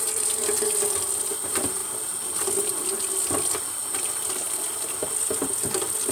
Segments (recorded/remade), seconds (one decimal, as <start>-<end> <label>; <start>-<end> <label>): 0.0-6.1 recorded